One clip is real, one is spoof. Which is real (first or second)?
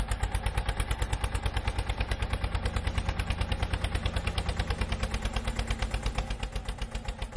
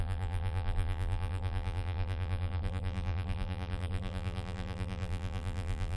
first